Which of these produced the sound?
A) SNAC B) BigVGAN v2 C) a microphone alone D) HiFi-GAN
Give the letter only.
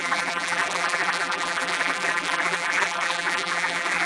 B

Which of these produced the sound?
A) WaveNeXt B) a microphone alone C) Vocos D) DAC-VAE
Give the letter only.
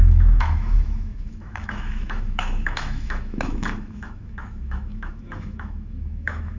D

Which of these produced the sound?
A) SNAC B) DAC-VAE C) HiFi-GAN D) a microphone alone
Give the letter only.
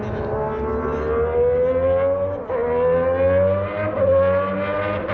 D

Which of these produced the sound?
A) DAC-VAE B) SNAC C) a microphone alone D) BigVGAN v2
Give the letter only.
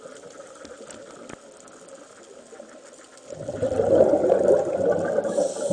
C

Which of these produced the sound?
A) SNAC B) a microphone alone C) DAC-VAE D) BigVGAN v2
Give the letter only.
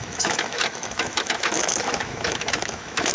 C